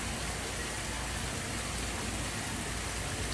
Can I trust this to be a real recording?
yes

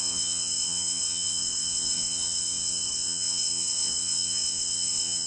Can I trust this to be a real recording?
no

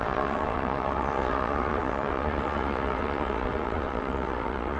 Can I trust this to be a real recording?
no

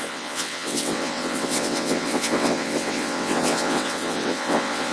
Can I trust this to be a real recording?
no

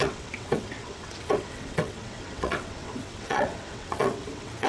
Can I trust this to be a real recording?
no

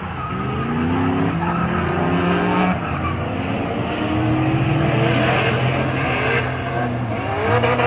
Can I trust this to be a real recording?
yes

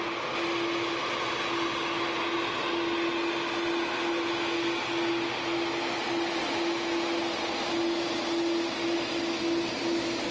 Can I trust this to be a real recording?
yes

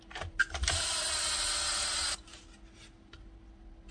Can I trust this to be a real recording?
yes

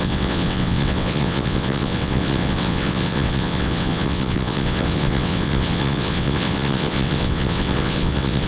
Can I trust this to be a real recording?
no